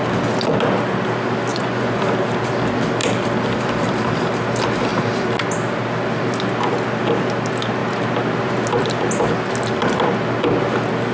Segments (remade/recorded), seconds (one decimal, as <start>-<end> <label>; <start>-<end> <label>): 0.0-1.5 recorded; 1.5-2.0 remade; 2.0-11.1 recorded